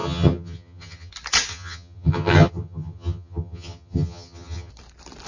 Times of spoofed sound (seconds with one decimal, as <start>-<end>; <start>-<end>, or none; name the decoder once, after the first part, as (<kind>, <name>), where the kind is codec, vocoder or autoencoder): 0.0-1.1 (vocoder, HiFi-GAN); 1.5-4.7